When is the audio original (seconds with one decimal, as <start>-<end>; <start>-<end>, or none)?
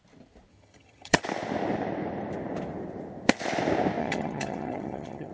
0.0-0.5; 1.2-4.0